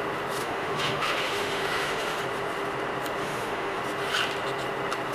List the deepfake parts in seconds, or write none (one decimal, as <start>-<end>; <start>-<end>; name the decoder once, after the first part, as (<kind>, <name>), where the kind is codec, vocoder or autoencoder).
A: 0.4-2.2 (autoencoder, DAC-VAE); 3.2-3.8